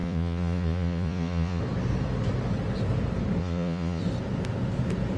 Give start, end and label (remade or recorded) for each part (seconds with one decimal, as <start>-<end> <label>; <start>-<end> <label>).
0.0-1.6 remade; 1.6-3.4 recorded; 3.4-4.0 remade; 4.0-5.2 recorded